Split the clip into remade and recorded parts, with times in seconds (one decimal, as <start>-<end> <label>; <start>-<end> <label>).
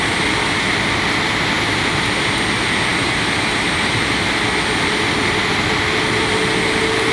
0.0-2.9 recorded; 2.9-4.4 remade; 4.4-7.1 recorded